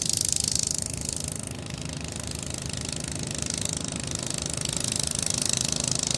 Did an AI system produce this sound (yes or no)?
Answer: yes